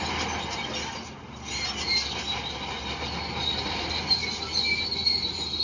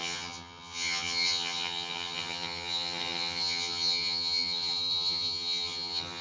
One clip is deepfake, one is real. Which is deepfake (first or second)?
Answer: second